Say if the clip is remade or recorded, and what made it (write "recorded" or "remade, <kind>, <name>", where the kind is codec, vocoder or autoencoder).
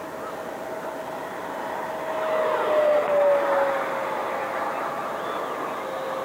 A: recorded